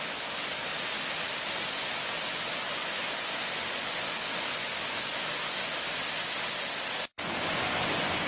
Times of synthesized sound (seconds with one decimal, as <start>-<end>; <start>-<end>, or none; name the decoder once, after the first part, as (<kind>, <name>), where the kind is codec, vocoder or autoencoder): 0.0-0.7 (vocoder, Vocos); 1.5-5.7; 7.1-8.3